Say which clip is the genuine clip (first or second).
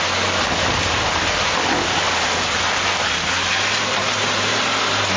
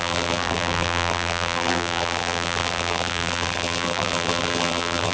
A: first